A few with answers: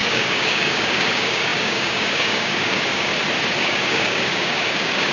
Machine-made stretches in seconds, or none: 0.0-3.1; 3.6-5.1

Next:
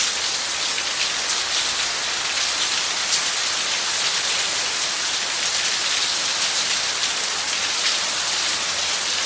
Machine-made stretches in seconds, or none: none

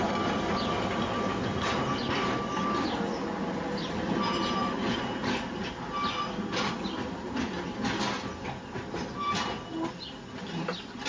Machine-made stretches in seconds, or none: none

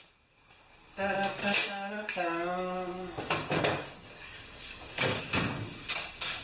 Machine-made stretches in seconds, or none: 1.4-5.2

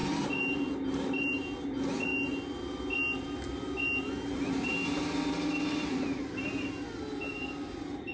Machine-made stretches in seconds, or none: none

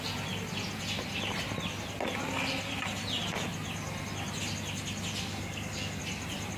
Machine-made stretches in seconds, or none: 5.3-6.0

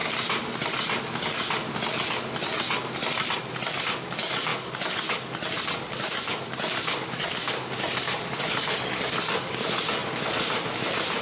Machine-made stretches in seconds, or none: 3.8-10.0

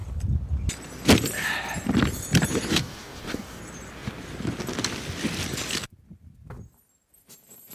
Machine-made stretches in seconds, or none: 2.7-3.6